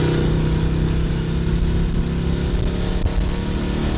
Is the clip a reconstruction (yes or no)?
no